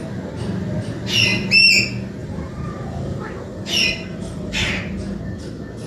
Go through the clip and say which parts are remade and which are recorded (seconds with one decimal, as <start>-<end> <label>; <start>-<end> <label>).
0.0-2.2 recorded; 2.2-4.8 remade; 4.8-5.9 recorded